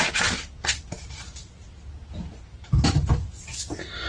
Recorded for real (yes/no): yes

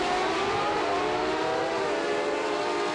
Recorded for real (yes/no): yes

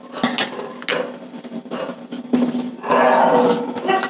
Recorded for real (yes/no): yes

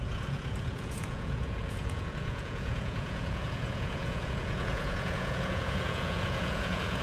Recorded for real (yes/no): no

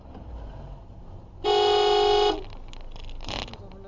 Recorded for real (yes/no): yes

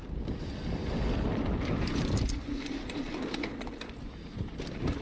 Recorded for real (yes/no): yes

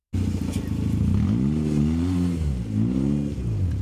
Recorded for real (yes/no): yes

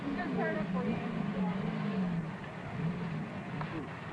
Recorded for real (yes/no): yes